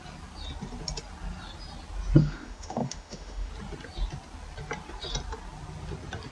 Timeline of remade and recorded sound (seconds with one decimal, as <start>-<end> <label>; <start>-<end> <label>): 0.0-2.2 recorded; 2.2-3.5 remade; 3.5-6.3 recorded

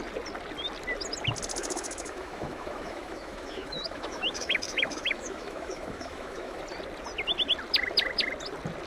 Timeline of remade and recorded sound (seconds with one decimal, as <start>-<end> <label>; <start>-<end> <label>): 0.0-1.6 recorded; 1.6-6.6 remade; 6.6-8.9 recorded

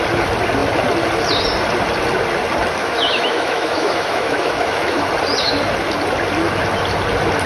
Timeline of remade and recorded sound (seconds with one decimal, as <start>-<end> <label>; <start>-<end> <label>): 0.0-2.8 recorded; 2.8-5.1 remade; 5.1-7.5 recorded